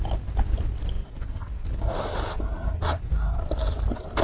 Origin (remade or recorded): recorded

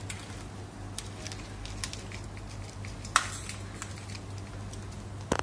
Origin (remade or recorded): recorded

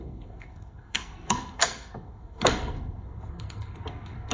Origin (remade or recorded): remade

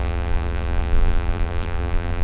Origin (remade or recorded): remade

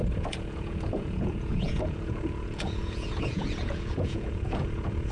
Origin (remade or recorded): remade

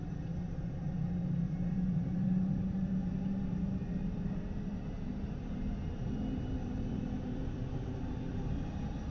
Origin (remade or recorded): remade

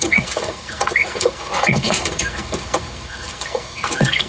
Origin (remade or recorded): remade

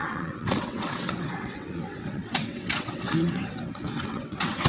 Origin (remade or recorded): remade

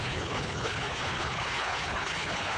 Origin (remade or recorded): remade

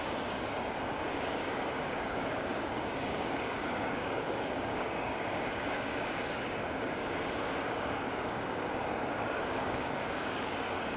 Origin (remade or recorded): remade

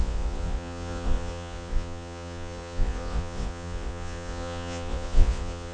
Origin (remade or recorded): remade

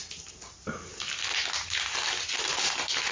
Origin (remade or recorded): recorded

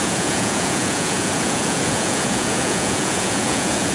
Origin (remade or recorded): remade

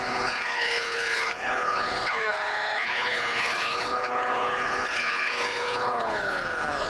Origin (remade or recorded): remade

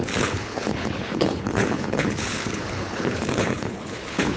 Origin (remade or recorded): remade